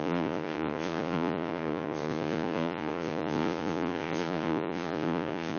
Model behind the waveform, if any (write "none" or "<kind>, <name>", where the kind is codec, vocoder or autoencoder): vocoder, Vocos